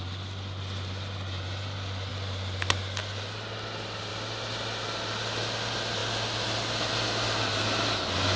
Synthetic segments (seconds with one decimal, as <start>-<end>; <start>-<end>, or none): none